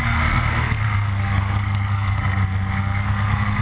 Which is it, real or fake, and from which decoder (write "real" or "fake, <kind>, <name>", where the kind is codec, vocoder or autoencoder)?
fake, codec, SNAC